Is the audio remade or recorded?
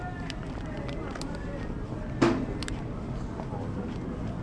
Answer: recorded